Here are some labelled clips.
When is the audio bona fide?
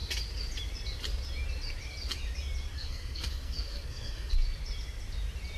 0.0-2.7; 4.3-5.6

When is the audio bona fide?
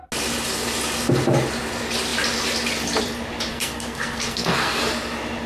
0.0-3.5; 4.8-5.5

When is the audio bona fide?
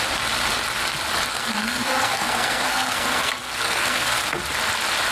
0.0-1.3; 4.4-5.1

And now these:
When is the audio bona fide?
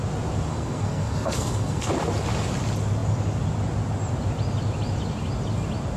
0.0-0.5; 1.9-6.0